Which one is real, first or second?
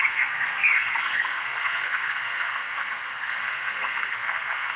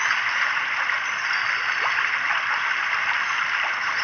second